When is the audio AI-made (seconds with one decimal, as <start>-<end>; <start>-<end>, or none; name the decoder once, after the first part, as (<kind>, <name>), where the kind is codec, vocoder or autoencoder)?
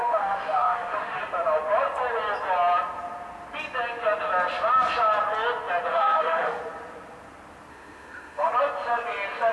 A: 0.0-1.2 (autoencoder, DAC-VAE); 5.9-6.6; 7.7-8.5